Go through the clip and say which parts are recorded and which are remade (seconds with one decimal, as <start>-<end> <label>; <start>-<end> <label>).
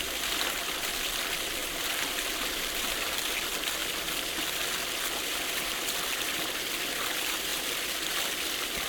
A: 0.0-8.9 recorded